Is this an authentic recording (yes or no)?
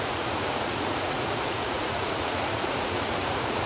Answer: no